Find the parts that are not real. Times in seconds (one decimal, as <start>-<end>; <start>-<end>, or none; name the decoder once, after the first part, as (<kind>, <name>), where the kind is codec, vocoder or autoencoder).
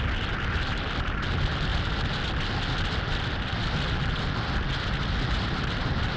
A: none